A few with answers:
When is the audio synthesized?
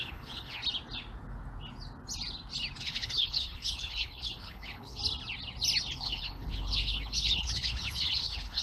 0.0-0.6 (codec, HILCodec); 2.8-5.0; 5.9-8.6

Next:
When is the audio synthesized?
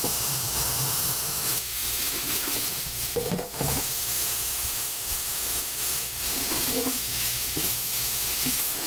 0.0-8.9 (autoencoder, DAC-VAE)